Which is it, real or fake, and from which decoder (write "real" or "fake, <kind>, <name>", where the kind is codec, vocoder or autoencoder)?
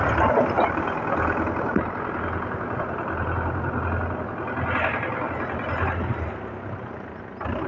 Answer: real